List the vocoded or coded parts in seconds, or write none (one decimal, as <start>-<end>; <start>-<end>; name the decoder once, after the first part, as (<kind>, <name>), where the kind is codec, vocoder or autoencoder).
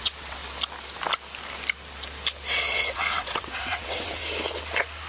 0.0-0.4 (vocoder, WaveNeXt); 2.7-4.2